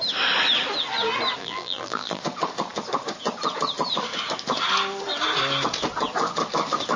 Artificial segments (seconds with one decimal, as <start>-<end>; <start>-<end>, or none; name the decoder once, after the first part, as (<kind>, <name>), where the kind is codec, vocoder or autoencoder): 1.4-2.2 (vocoder, BigVGAN v2)

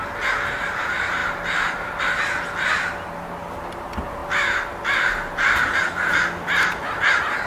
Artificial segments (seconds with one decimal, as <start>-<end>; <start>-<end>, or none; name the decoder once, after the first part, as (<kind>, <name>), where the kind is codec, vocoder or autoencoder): none

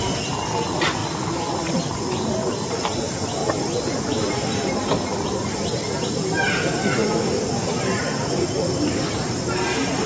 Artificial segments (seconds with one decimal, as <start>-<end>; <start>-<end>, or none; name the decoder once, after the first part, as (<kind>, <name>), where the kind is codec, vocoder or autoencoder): 1.0-1.8 (vocoder, BigVGAN v2); 3.4-6.1

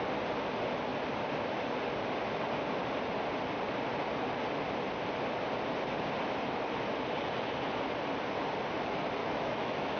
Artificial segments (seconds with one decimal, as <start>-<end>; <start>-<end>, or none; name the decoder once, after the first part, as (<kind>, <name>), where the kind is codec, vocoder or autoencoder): 9.2-10.0 (autoencoder, DAC-VAE)

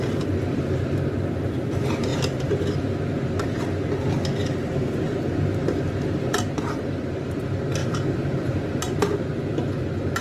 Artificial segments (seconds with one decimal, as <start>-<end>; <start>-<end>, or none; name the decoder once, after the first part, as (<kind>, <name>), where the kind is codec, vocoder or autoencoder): 4.4-7.3 (vocoder, BigVGAN v2); 7.8-8.8